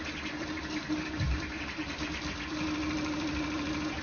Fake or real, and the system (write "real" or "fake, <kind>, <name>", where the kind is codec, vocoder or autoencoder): fake, vocoder, BigVGAN v2